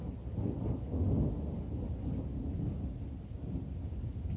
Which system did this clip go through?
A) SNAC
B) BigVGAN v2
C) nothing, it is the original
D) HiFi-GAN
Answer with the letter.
C